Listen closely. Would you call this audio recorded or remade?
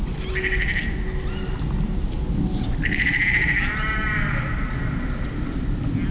recorded